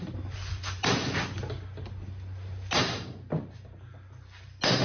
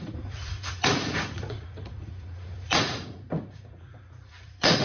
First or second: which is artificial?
second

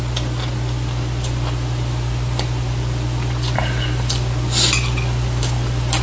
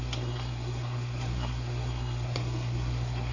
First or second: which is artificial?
second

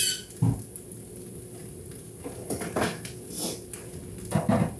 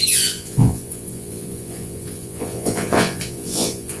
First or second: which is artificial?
second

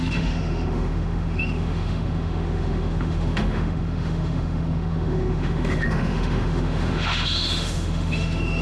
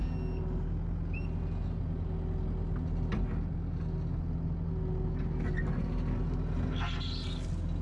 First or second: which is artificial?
first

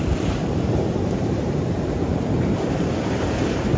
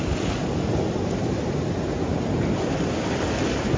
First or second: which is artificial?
first